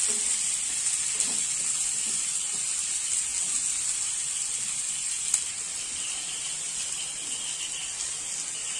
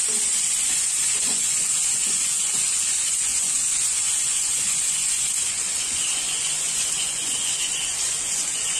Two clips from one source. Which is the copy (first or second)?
second